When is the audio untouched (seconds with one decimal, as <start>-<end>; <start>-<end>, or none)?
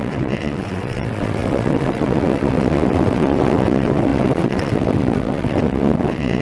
none